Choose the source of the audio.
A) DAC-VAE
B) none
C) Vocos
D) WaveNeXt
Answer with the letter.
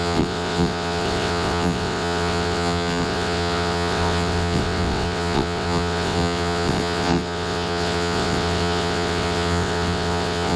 D